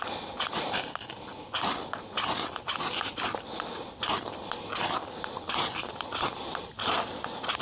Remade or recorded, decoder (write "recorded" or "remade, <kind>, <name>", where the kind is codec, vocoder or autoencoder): recorded